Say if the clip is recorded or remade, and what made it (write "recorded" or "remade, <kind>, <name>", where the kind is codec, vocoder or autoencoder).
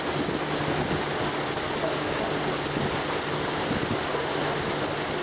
recorded